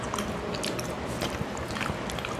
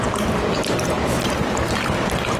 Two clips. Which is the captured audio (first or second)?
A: first